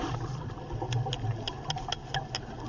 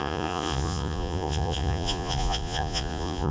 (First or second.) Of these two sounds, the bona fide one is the first